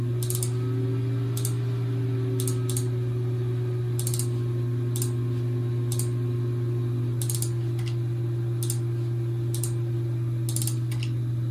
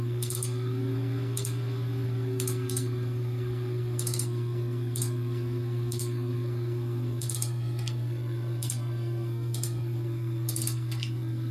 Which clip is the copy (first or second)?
second